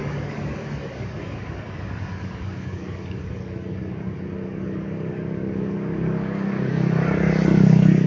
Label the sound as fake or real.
fake